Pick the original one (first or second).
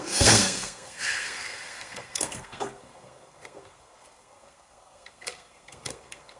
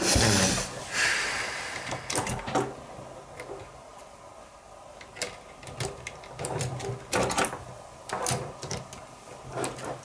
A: second